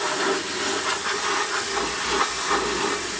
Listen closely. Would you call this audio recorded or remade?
recorded